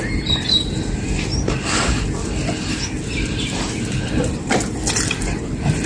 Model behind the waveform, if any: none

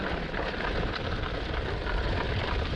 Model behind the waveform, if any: vocoder, BigVGAN v2